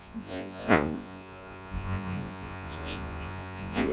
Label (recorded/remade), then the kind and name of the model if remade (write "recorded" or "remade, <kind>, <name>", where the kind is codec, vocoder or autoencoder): remade, vocoder, Vocos